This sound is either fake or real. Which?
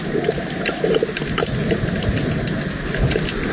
real